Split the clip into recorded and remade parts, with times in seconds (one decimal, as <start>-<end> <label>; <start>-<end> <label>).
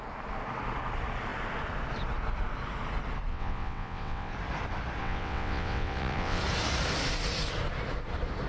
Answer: 0.0-3.3 recorded; 3.3-4.3 remade; 4.3-5.0 recorded; 5.0-6.4 remade; 6.4-8.5 recorded